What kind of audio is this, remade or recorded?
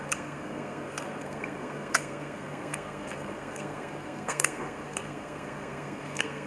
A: remade